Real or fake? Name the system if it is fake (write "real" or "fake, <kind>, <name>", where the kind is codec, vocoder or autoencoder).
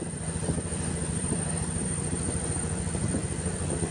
fake, vocoder, Vocos